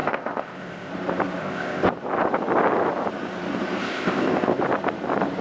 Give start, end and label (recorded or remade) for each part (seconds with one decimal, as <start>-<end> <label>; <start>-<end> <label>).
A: 0.0-0.9 remade; 0.9-1.4 recorded; 1.4-1.9 remade; 1.9-3.8 recorded; 3.8-4.6 remade; 4.6-5.4 recorded